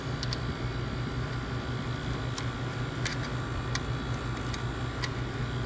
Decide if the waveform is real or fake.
real